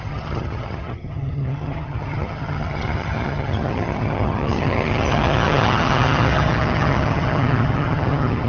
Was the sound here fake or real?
fake